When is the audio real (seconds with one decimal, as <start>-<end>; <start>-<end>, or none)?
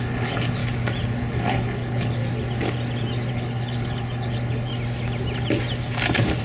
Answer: 0.6-1.2; 2.2-3.3; 4.7-6.4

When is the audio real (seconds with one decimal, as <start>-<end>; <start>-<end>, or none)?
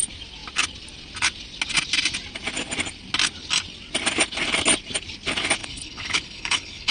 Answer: 0.0-5.6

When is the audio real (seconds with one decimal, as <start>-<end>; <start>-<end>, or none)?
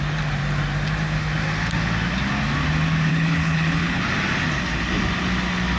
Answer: 0.0-3.1; 4.0-5.8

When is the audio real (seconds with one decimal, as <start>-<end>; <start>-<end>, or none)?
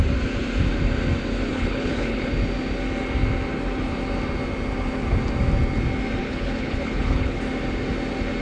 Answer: 0.0-1.5; 2.3-6.2; 7.4-8.4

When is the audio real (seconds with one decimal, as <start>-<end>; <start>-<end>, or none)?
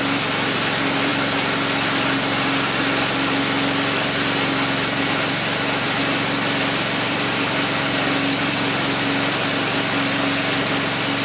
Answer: 0.0-11.2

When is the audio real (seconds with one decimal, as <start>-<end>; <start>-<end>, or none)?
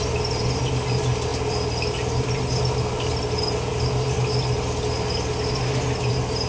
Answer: 0.0-6.5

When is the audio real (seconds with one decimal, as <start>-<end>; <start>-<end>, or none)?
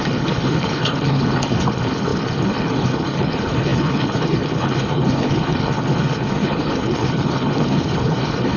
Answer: none